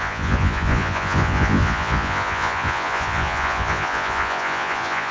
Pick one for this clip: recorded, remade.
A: remade